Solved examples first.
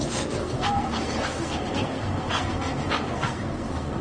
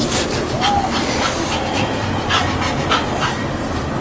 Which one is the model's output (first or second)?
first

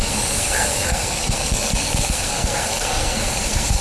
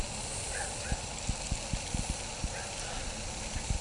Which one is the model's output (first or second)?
first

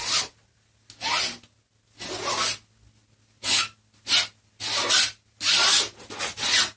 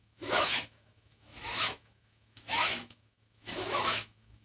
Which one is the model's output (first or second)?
second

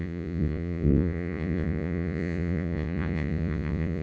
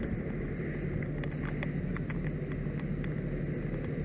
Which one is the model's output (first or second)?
first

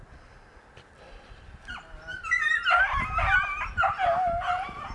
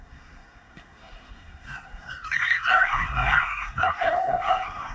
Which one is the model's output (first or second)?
second